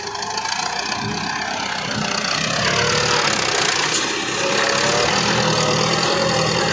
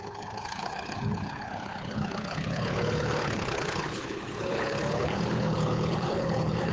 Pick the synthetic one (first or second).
second